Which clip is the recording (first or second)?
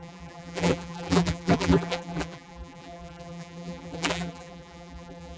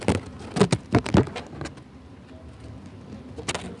second